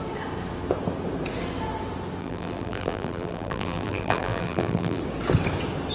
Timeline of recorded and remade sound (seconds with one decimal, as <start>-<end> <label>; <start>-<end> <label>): 0.0-2.2 recorded; 2.2-5.0 remade; 5.0-5.9 recorded